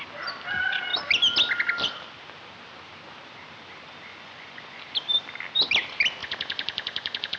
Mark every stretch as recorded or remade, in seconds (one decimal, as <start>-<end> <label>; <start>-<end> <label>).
0.0-4.1 recorded; 4.1-4.8 remade; 4.8-6.2 recorded; 6.2-7.4 remade